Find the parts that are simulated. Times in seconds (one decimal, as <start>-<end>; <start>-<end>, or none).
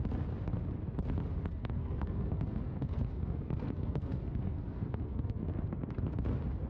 1.6-5.6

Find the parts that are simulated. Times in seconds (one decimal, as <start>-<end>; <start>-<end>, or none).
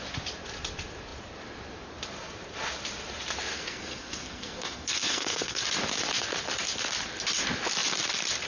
3.5-5.6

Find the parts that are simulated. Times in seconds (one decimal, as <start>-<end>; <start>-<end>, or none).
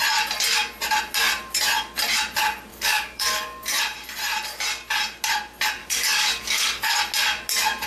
2.7-3.8; 5.8-7.0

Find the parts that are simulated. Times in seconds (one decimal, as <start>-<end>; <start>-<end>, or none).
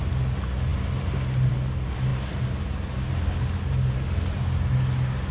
none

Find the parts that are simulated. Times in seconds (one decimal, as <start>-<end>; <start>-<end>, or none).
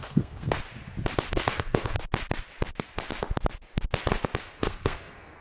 0.0-0.6; 1.3-2.0; 4.4-5.4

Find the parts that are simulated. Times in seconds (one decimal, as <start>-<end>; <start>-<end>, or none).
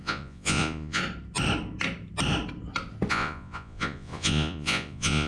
0.0-1.0; 3.1-5.3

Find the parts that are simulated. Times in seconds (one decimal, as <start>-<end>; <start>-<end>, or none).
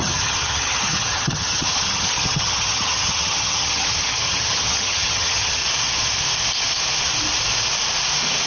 0.0-5.6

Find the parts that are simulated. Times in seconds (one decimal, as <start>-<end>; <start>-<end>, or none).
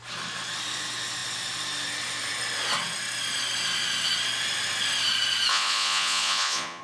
5.5-6.8